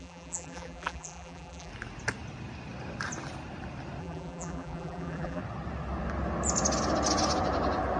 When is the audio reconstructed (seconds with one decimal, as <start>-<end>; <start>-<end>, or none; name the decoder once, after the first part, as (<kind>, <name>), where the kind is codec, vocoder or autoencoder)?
0.0-1.7 (vocoder, BigVGAN v2); 4.0-5.4